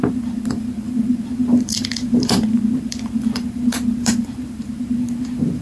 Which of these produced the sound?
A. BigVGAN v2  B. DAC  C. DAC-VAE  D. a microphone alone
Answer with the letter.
A